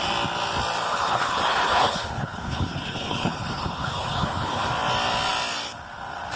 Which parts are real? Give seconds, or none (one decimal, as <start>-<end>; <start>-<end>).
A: 0.0-0.9; 4.7-6.4